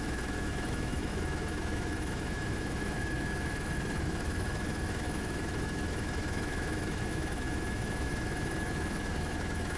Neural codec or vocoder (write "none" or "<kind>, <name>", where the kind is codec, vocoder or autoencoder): autoencoder, DAC-VAE